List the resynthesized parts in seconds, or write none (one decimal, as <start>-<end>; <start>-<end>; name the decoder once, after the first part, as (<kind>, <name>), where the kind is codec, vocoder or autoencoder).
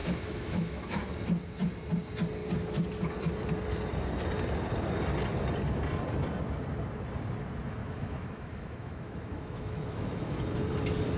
0.0-1.0 (autoencoder, DAC-VAE); 7.8-10.4